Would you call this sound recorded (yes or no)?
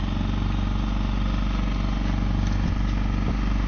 yes